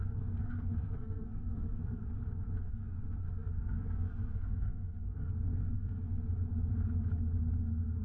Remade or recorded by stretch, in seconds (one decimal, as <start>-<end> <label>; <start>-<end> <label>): 0.0-2.0 remade; 2.0-2.7 recorded; 2.7-6.2 remade; 6.2-7.6 recorded; 7.6-8.0 remade